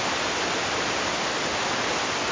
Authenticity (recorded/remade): recorded